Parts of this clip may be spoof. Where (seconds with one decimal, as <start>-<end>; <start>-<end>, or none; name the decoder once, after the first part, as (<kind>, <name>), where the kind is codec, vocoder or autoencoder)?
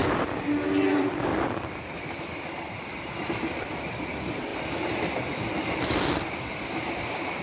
0.9-1.3 (vocoder, BigVGAN v2); 2.2-4.5; 5.2-7.4